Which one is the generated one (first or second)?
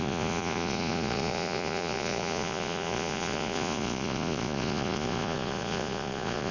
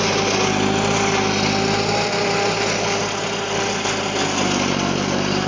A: first